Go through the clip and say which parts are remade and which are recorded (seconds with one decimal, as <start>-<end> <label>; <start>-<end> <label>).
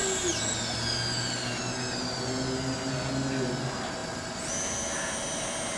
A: 0.0-5.8 recorded